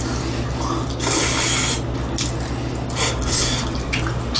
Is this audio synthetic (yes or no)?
no